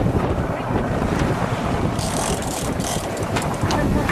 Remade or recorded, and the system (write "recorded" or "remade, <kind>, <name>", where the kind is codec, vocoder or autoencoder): remade, vocoder, BigVGAN v2